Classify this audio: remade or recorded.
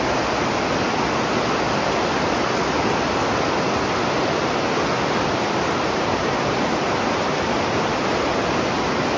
recorded